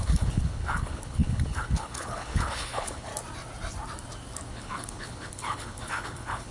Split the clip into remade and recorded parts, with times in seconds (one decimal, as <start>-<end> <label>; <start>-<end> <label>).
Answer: 0.0-3.1 remade; 3.1-4.5 recorded; 4.5-6.5 remade